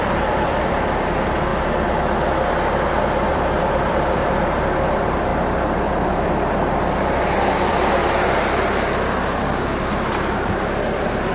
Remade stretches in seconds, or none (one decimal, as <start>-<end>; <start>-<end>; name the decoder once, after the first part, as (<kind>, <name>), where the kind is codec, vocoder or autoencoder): 0.0-1.5 (vocoder, BigVGAN v2); 3.3-5.3; 7.7-11.3